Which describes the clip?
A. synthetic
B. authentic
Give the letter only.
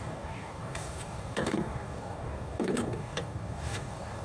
A